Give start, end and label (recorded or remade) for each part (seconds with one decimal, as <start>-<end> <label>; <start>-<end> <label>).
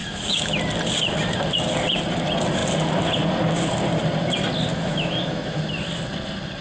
0.0-0.6 remade; 0.6-4.7 recorded; 4.7-5.6 remade; 5.6-6.6 recorded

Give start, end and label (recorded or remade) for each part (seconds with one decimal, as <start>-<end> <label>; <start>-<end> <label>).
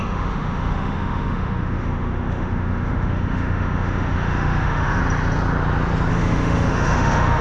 0.0-5.0 remade; 5.0-6.1 recorded; 6.1-7.4 remade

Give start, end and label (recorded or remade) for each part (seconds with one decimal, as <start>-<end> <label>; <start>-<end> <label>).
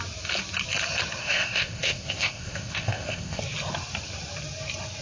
0.0-1.2 recorded; 1.2-3.4 remade; 3.4-5.0 recorded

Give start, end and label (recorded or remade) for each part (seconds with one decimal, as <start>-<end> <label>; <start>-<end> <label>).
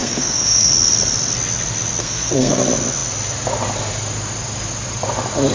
0.0-0.7 remade; 0.7-2.0 recorded; 2.0-2.6 remade; 2.6-5.5 recorded